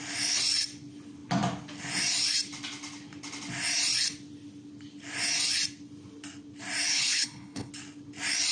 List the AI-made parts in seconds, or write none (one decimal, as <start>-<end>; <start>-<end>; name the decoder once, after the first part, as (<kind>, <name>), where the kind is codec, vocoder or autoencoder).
6.9-7.7 (codec, HILCodec)